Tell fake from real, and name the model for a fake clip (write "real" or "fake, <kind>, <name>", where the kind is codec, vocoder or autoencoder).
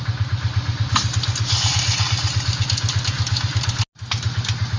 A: real